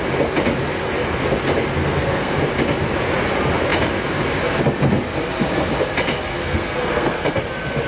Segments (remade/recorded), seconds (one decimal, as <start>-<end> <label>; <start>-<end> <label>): 0.0-1.8 recorded; 1.8-2.4 remade; 2.4-6.3 recorded; 6.3-7.4 remade; 7.4-7.9 recorded

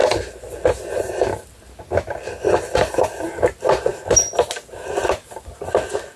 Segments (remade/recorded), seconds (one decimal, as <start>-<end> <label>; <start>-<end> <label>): 0.0-6.2 recorded

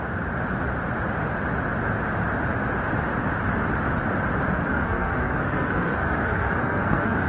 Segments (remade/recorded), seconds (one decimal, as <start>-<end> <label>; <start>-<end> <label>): 0.0-4.7 recorded; 4.7-7.3 remade

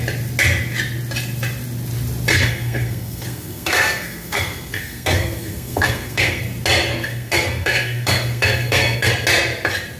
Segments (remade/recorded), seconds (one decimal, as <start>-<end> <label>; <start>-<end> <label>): 0.0-2.3 recorded; 2.3-6.4 remade; 6.4-6.9 recorded; 6.9-9.1 remade; 9.1-10.0 recorded

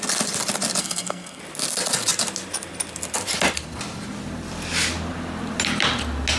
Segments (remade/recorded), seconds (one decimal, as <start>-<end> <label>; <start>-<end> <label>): 0.0-0.8 recorded; 0.8-1.4 remade; 1.4-6.4 recorded

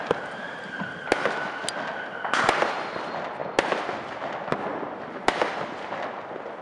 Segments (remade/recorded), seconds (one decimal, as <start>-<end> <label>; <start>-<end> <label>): 0.0-6.6 recorded

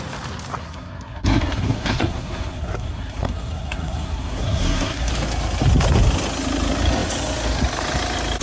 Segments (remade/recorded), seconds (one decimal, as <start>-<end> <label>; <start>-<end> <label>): 0.0-0.6 recorded; 0.6-5.1 remade; 5.1-8.4 recorded